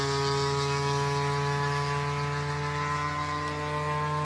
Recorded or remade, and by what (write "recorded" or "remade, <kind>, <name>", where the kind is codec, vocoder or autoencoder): recorded